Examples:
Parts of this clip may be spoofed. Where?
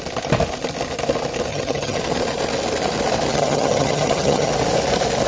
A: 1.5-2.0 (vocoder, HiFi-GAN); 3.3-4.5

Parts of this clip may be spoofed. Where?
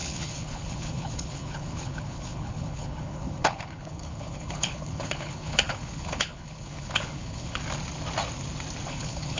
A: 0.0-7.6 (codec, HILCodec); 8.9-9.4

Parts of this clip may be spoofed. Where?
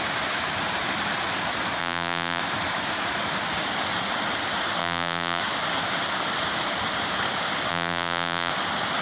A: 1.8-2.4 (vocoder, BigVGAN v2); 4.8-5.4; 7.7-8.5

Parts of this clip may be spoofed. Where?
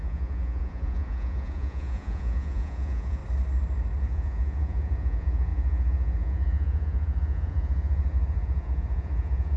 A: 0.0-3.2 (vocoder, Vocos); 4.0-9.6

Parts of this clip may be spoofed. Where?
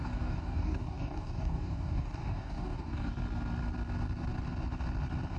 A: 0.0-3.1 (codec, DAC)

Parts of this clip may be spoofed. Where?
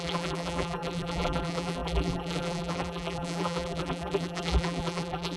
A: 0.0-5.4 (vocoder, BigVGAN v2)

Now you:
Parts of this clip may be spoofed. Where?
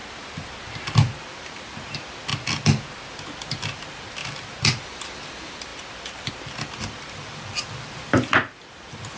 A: 1.2-2.3 (vocoder, BigVGAN v2); 3.1-9.2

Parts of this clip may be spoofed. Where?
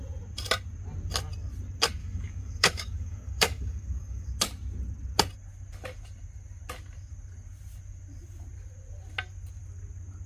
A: 2.0-4.3 (codec, DAC)